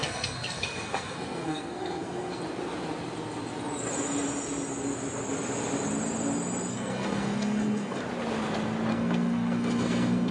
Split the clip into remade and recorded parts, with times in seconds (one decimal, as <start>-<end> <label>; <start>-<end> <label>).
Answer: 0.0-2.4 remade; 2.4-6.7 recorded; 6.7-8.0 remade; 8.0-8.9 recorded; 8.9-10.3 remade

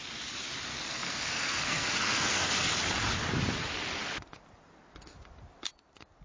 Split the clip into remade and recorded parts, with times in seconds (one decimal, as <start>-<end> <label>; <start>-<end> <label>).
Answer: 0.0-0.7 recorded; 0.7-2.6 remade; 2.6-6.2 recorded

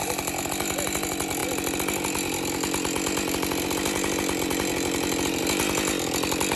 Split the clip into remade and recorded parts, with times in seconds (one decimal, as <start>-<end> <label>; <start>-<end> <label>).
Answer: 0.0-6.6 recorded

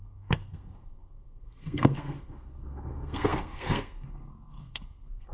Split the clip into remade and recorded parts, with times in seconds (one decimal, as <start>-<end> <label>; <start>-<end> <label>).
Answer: 0.0-5.3 remade